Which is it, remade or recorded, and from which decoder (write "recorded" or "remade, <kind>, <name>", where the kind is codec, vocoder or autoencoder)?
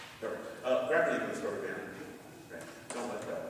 recorded